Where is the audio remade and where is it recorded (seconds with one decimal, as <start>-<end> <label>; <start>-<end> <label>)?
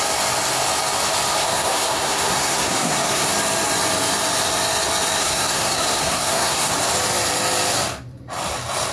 0.0-1.4 recorded; 1.4-3.3 remade; 3.3-5.2 recorded; 5.2-6.7 remade; 6.7-8.9 recorded